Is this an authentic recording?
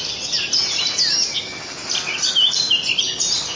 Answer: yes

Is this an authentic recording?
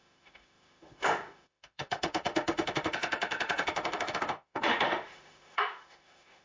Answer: no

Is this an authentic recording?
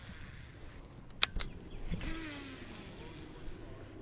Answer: yes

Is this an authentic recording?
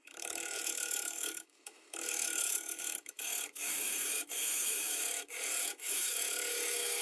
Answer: no